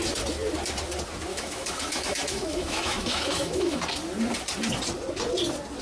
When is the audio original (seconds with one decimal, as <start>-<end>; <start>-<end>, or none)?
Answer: 0.0-1.3; 3.8-5.8